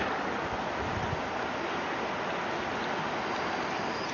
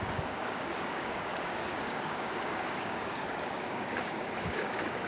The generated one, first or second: second